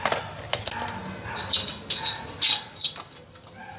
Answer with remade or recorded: recorded